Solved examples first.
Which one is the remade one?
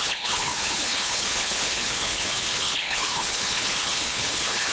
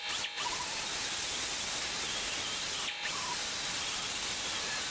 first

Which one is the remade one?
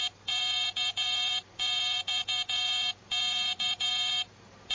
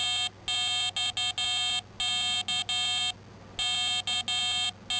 first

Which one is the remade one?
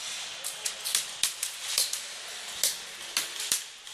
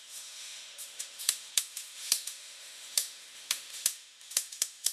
second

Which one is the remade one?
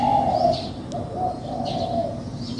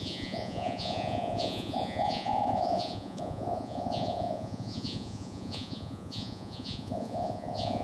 second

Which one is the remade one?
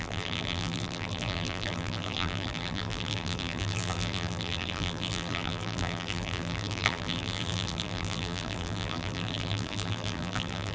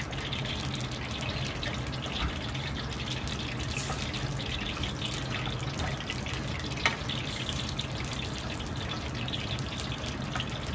first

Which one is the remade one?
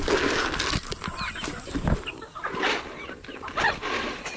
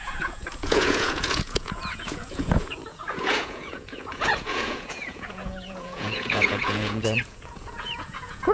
second